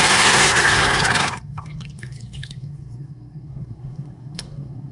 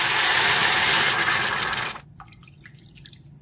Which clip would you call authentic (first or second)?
second